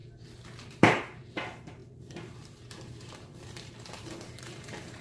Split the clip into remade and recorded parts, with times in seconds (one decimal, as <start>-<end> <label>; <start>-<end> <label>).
0.0-0.7 recorded; 0.7-5.0 remade